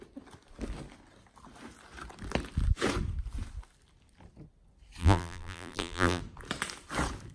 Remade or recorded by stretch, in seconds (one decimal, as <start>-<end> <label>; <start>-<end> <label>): 0.0-5.0 recorded; 5.0-6.2 remade; 6.2-7.3 recorded